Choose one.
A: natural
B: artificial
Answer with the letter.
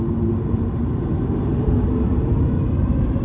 B